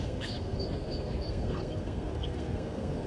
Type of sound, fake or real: fake